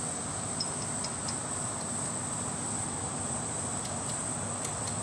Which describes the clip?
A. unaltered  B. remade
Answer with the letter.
A